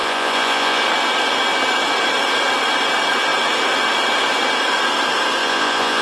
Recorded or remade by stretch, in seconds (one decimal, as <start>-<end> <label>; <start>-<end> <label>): 0.0-0.8 remade; 0.8-5.4 recorded; 5.4-6.0 remade

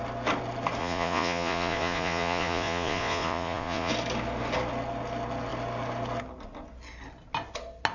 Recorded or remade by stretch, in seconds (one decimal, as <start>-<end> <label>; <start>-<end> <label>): 0.0-0.8 recorded; 0.8-3.9 remade; 3.9-7.9 recorded